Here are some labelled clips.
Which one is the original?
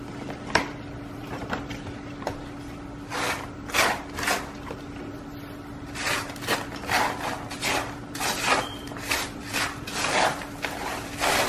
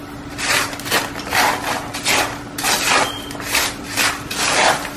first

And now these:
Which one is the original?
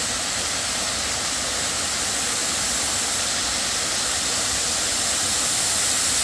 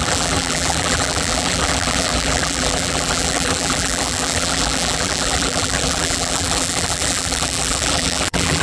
first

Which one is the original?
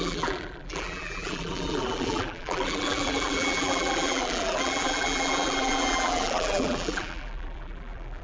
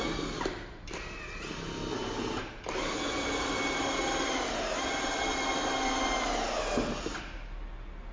second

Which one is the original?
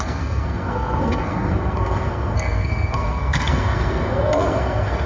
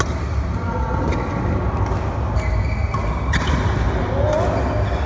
second